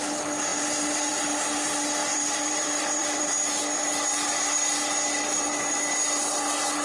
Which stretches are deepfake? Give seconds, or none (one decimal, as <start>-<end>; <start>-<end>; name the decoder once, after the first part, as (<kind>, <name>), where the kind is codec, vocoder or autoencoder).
2.0-3.6 (vocoder, BigVGAN v2)